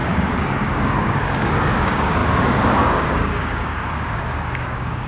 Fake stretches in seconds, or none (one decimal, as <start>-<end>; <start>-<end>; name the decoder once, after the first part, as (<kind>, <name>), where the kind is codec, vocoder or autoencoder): 0.0-5.1 (codec, DAC)